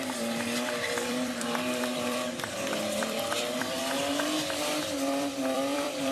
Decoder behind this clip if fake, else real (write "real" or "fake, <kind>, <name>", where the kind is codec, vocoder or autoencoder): fake, vocoder, BigVGAN v2